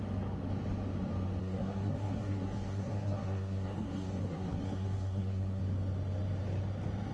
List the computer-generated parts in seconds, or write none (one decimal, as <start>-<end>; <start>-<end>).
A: 1.4-5.6